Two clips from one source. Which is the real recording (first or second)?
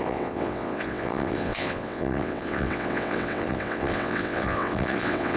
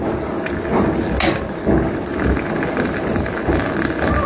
second